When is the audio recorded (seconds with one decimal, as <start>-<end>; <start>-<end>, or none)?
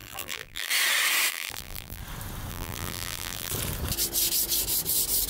0.7-1.3; 2.0-2.5; 3.5-5.3